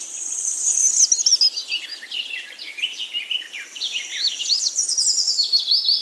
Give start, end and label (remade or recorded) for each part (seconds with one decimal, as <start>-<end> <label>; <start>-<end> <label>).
0.0-6.0 recorded